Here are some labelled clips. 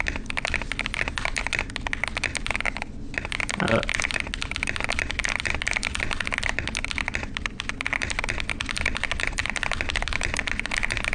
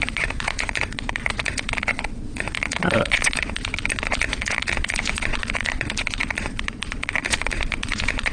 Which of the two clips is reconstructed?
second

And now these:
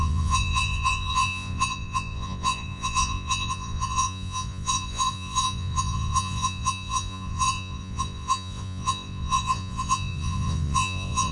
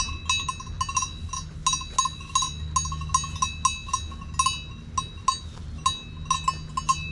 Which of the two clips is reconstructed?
first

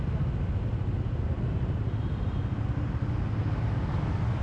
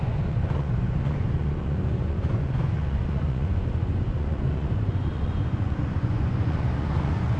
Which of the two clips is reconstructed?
second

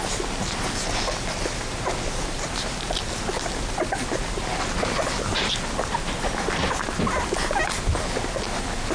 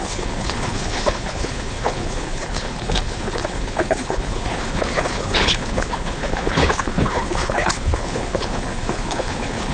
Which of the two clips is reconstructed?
second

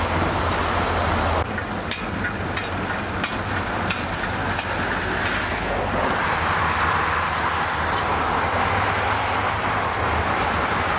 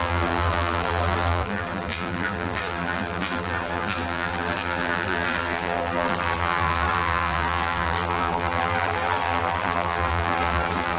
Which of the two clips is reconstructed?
second